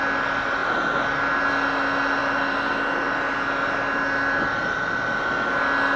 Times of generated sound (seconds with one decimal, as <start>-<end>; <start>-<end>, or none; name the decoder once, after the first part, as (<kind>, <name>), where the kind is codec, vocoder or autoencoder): none